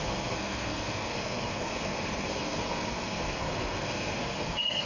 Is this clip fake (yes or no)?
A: yes